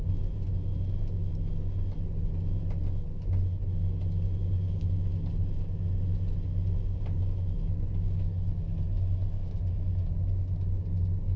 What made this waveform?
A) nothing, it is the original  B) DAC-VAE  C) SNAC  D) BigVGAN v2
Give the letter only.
A